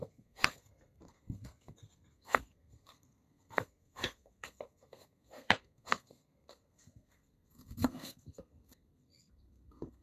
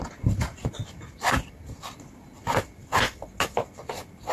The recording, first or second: second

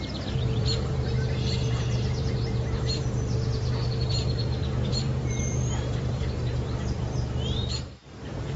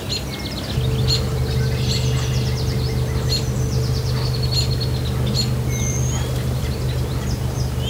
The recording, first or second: second